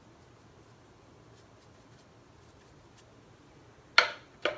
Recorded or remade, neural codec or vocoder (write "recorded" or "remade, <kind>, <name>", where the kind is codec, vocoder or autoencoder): recorded